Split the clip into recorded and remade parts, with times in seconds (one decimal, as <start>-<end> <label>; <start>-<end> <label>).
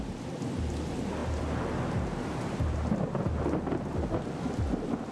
0.0-5.1 recorded